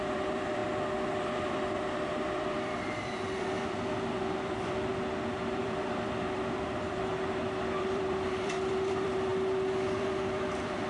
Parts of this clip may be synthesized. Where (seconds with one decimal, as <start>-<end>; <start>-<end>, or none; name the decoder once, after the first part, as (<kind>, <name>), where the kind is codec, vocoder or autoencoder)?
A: 0.0-0.6 (vocoder, BigVGAN v2); 1.2-4.9; 5.6-9.3; 10.0-10.9